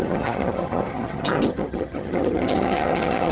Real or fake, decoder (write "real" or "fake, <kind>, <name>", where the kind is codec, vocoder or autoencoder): fake, vocoder, HiFi-GAN